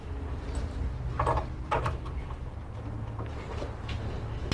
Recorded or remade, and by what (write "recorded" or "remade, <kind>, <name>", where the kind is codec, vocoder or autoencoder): recorded